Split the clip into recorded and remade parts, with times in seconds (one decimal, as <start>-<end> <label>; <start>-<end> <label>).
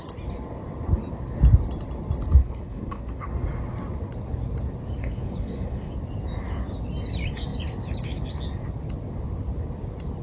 0.0-2.4 recorded; 2.4-3.3 remade; 3.3-5.0 recorded; 5.0-5.9 remade; 5.9-10.2 recorded